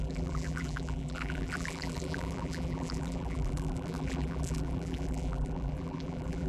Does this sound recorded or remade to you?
remade